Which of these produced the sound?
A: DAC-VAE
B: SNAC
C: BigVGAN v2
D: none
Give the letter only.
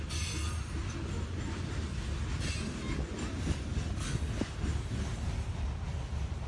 D